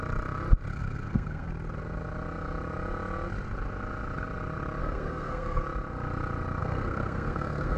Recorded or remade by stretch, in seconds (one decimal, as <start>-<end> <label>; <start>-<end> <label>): 0.0-0.7 recorded; 0.7-1.5 remade; 1.5-4.8 recorded; 4.8-5.6 remade; 5.6-6.6 recorded; 6.6-7.8 remade